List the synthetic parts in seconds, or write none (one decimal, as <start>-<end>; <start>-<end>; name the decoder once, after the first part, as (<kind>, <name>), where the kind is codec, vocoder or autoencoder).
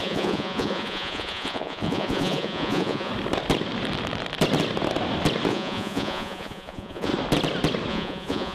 0.0-3.1 (vocoder, Vocos); 5.5-7.1; 7.9-8.5